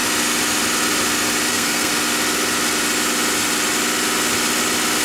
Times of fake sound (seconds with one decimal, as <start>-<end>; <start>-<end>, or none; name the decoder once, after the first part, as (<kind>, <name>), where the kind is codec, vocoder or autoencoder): 1.5-1.9 (codec, SNAC)